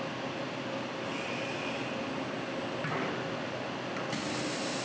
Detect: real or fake real